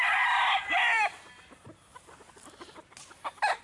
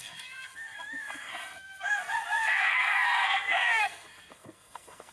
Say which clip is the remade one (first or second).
second